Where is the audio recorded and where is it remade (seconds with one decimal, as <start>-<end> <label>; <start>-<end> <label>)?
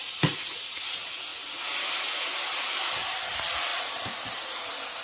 0.0-5.0 recorded